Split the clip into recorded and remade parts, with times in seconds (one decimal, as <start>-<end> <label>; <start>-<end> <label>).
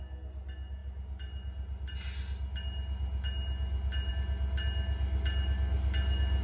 0.0-6.4 recorded